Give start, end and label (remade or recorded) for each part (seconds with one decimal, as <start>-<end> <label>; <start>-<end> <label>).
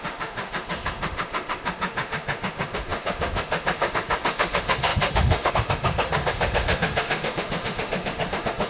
0.0-8.7 remade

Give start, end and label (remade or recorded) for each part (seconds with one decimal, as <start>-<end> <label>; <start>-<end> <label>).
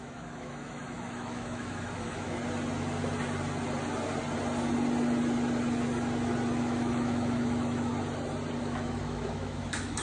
0.0-2.4 remade; 2.4-6.6 recorded; 6.6-7.9 remade; 7.9-8.6 recorded; 8.6-10.0 remade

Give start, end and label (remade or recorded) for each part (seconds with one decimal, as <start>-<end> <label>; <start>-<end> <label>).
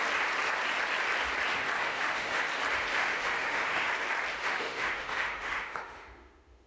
0.0-1.8 recorded; 1.8-2.4 remade; 2.4-2.9 recorded; 2.9-3.9 remade; 3.9-4.3 recorded; 4.3-6.7 remade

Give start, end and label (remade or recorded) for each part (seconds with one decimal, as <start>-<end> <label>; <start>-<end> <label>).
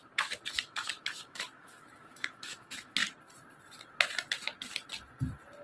0.0-0.5 recorded; 0.5-3.0 remade; 3.0-5.6 recorded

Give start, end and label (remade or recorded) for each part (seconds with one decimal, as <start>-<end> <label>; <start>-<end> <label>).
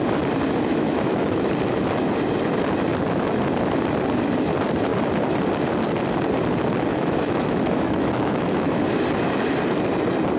0.0-0.7 recorded; 0.7-1.5 remade; 1.5-6.9 recorded; 6.9-8.8 remade; 8.8-10.4 recorded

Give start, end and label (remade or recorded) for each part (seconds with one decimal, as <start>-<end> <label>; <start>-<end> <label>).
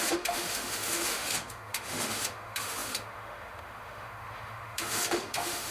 0.0-5.7 remade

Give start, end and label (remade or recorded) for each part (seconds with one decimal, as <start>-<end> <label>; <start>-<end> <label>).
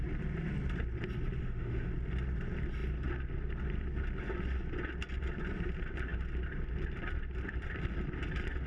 0.0-1.4 recorded; 1.4-1.9 remade; 1.9-8.7 recorded